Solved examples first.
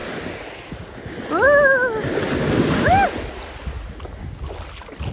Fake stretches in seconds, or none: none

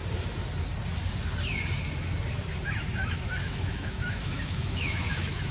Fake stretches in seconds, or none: 3.0-5.5 (autoencoder, DAC-VAE)

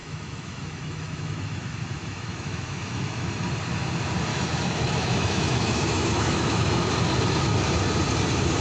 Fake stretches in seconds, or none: 0.0-3.3 (autoencoder, DAC-VAE); 4.3-6.9

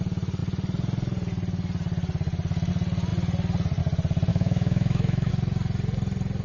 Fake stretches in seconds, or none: 4.3-5.3 (autoencoder, DAC-VAE)

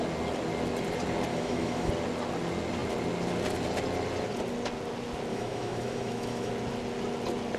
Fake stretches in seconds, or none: 1.3-1.9 (autoencoder, DAC-VAE); 5.3-6.5

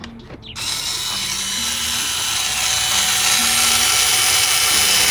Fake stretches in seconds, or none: none

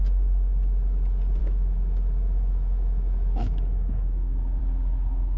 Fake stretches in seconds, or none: 1.4-4.6 (autoencoder, DAC-VAE)

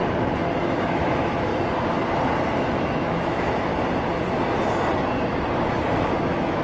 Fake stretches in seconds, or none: 0.6-1.5 (autoencoder, DAC-VAE); 2.4-3.7; 5.9-6.6